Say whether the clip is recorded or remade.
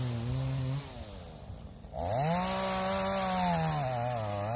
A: recorded